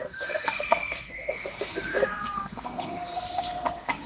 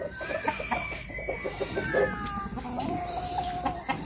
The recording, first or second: second